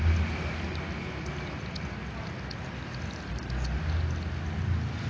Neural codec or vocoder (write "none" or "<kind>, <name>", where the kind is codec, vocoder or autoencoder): none